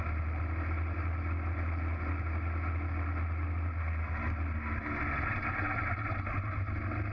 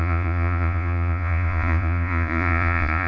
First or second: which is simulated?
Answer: second